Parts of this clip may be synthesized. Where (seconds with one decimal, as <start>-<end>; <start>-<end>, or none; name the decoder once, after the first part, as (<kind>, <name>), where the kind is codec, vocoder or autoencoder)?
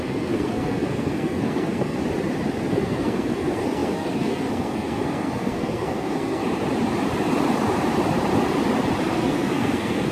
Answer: 0.0-2.0 (codec, SNAC); 2.7-6.4; 9.1-10.1